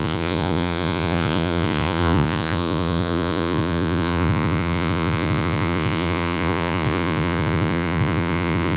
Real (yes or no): no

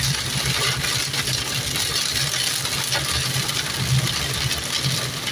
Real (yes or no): yes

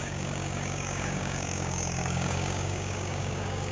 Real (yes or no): no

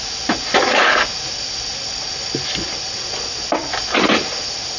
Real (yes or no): yes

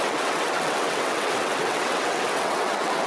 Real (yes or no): no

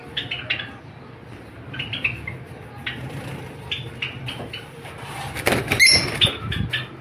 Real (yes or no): yes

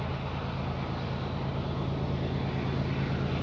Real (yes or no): yes